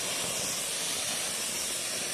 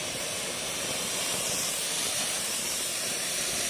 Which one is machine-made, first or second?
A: second